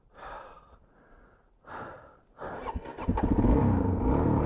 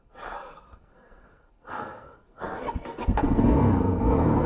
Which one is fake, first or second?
second